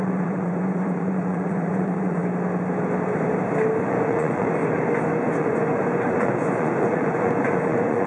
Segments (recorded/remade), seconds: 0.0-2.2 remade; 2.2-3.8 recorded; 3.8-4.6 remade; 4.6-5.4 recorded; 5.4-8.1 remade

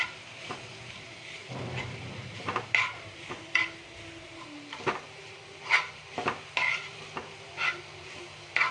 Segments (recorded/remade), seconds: 0.0-7.6 remade; 7.6-8.7 recorded

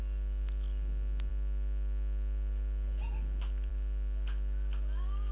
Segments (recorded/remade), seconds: 0.0-1.3 remade; 1.3-3.7 recorded; 3.7-5.3 remade

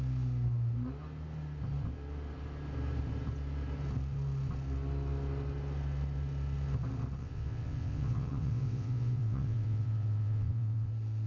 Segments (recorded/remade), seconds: 0.0-7.2 recorded; 7.2-10.9 remade; 10.9-11.3 recorded

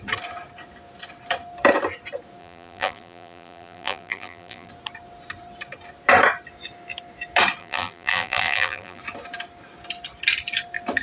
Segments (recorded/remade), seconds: 0.0-2.4 recorded; 2.4-4.7 remade; 4.7-7.6 recorded; 7.6-9.0 remade; 9.0-11.0 recorded

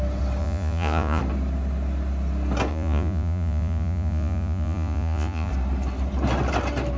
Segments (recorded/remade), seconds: 0.0-0.4 recorded; 0.4-1.2 remade; 1.2-2.7 recorded; 2.7-5.5 remade; 5.5-7.0 recorded